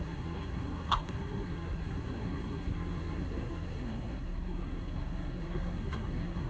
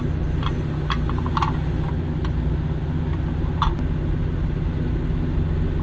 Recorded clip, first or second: second